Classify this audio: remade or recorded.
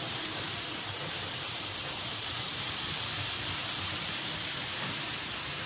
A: remade